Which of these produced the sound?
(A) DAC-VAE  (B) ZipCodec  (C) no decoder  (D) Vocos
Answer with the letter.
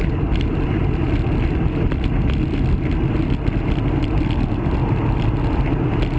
C